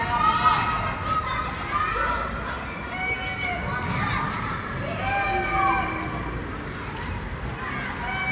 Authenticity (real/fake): real